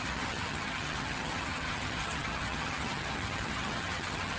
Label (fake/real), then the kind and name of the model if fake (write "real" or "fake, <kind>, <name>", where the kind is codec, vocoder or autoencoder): fake, vocoder, HiFi-GAN